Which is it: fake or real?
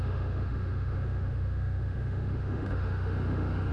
fake